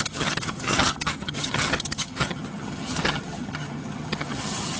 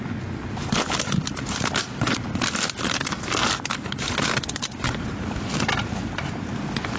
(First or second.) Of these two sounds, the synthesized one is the first